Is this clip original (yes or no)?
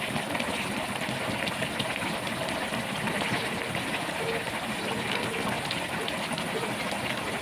yes